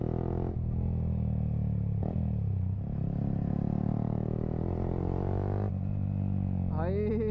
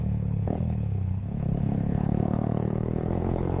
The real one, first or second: first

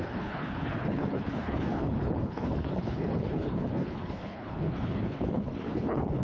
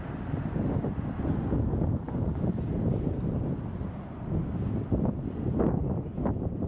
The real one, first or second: second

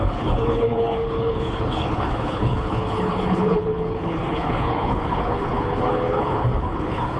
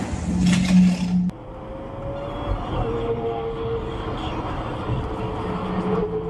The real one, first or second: second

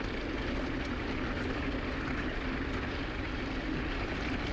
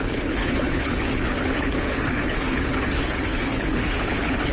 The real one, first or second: first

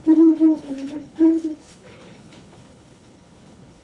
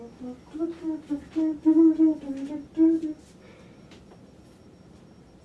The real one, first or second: second